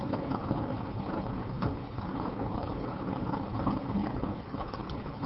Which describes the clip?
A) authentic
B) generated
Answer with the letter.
B